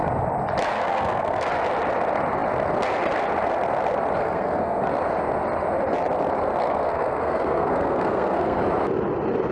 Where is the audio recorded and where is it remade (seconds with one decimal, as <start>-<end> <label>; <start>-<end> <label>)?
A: 0.0-0.7 recorded; 0.7-1.5 remade; 1.5-4.2 recorded; 4.2-4.8 remade; 4.8-6.6 recorded; 6.6-8.6 remade; 8.6-9.5 recorded